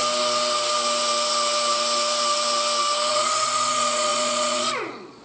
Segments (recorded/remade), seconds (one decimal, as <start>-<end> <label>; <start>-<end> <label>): 0.0-3.1 recorded; 3.1-5.2 remade